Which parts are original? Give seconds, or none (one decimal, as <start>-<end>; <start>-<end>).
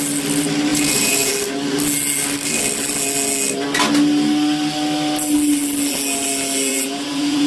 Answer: 0.0-0.7; 1.3-6.7